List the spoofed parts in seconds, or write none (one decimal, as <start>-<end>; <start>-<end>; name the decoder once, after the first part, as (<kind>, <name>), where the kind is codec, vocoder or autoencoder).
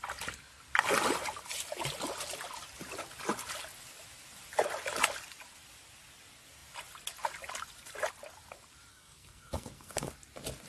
8.9-10.1 (codec, SNAC)